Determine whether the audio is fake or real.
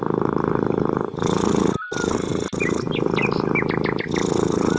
real